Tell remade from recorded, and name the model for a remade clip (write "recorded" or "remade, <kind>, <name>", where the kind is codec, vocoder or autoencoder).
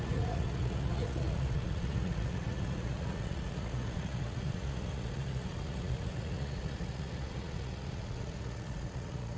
remade, vocoder, Vocos